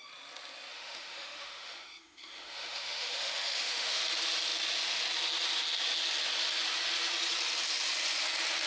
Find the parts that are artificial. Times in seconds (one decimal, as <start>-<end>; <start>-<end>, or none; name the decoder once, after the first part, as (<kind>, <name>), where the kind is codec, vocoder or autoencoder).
0.7-4.0 (autoencoder, DAC-VAE)